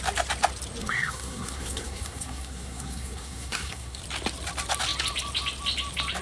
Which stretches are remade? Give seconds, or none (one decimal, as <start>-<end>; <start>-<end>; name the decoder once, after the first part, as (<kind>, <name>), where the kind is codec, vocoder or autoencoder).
0.8-4.0 (codec, SNAC)